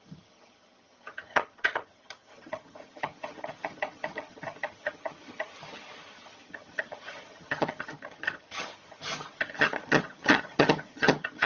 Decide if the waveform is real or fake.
fake